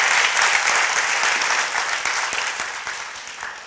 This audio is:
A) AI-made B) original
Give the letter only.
B